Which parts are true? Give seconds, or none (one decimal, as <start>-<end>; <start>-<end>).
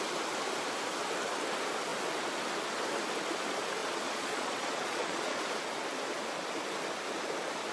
0.0-3.8; 5.4-7.7